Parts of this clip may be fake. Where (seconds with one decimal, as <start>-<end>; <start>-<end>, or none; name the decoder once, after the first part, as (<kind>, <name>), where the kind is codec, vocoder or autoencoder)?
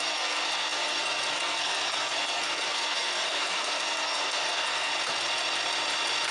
0.0-4.9 (codec, SNAC)